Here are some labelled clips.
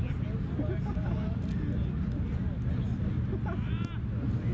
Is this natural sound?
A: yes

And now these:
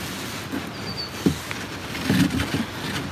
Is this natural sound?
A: yes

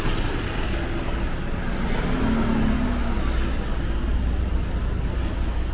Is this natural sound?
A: yes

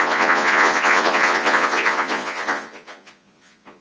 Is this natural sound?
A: no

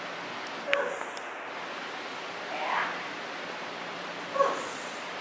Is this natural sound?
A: yes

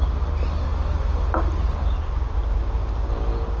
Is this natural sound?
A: yes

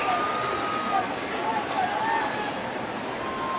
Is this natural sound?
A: yes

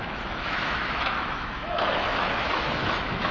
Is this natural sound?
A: no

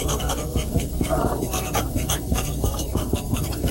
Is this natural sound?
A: no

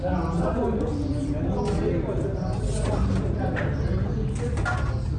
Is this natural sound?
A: yes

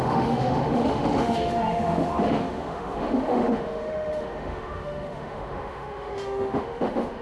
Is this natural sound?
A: no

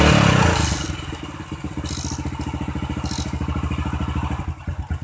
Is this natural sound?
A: yes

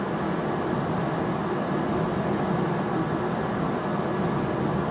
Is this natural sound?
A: yes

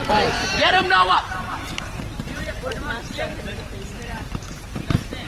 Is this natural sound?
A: no